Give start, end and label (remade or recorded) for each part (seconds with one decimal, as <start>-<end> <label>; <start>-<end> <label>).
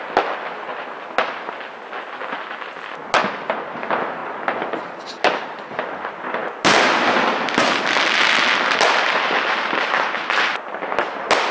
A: 0.0-11.5 recorded